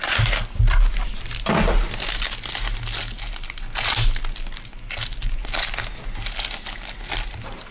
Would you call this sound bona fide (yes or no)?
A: yes